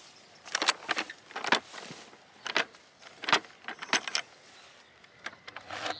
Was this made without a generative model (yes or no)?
yes